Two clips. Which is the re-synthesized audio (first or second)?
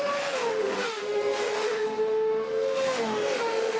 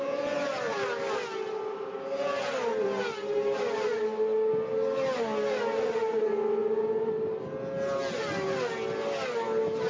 first